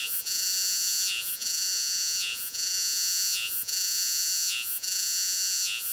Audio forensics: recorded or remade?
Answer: remade